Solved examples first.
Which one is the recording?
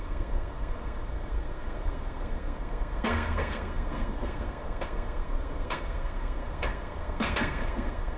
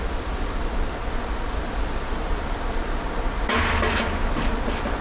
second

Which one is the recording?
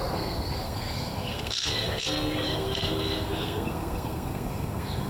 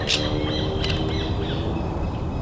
second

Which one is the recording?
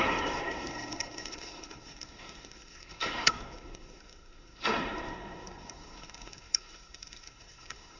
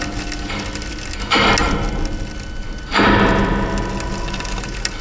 second